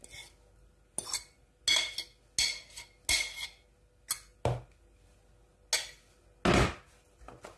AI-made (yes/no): no